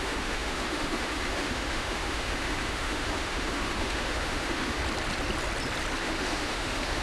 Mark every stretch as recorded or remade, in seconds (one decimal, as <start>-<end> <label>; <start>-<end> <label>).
0.0-4.8 remade; 4.8-6.0 recorded; 6.0-7.0 remade